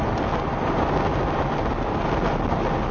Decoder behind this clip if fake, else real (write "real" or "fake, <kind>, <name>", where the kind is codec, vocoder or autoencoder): real